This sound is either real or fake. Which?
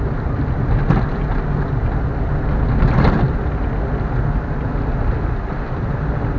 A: real